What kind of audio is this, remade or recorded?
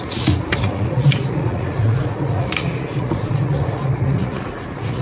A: remade